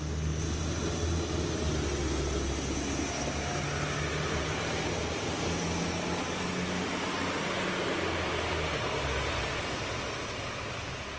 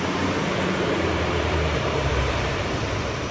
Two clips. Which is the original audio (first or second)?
first